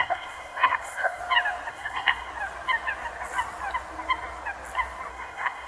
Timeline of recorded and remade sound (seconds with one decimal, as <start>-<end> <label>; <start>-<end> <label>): 0.0-1.2 remade; 1.2-1.7 recorded; 1.7-2.3 remade; 2.3-5.1 recorded; 5.1-5.7 remade

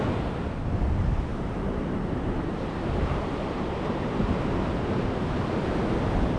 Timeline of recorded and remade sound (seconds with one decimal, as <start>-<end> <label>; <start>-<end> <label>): 0.0-1.3 recorded; 1.3-5.1 remade; 5.1-6.4 recorded